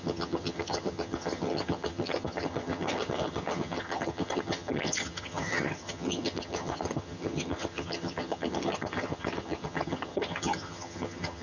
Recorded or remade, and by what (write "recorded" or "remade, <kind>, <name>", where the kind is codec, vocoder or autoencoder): remade, vocoder, HiFi-GAN